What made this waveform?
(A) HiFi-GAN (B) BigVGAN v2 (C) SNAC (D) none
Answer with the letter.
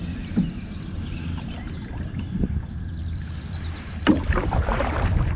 B